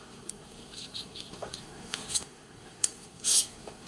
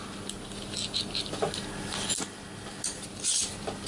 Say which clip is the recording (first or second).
second